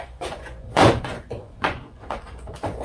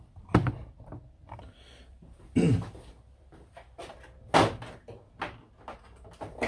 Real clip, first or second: second